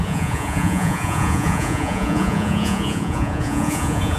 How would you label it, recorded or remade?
remade